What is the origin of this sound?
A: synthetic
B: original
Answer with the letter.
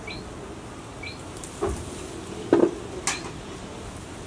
B